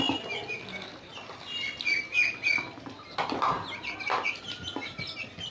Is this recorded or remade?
recorded